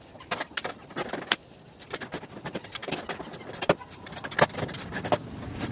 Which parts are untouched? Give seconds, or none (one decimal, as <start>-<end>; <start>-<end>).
0.0-5.7